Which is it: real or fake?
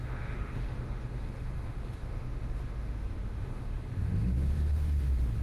fake